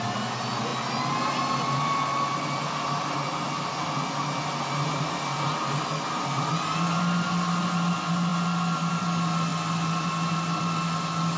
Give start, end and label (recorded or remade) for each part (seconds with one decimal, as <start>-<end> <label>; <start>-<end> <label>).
0.0-11.4 recorded